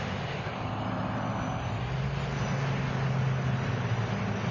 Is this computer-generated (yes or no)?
no